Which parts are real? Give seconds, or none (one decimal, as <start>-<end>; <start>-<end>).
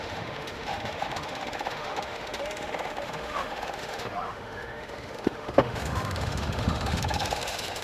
none